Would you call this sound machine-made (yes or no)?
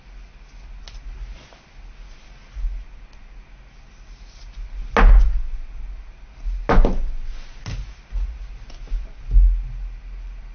no